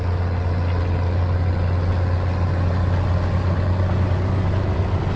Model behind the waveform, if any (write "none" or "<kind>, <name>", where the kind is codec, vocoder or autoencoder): none